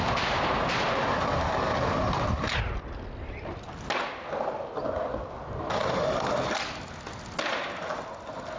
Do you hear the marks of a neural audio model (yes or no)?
no